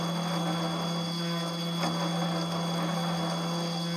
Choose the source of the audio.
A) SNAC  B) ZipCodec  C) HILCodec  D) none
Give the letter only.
D